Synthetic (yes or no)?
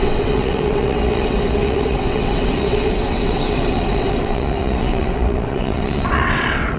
yes